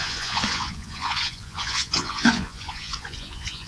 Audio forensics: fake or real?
fake